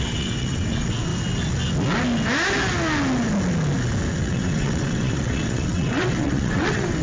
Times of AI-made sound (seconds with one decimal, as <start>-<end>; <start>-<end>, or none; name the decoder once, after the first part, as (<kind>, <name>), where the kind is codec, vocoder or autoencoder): 0.0-1.1 (vocoder, WaveNeXt); 4.1-7.0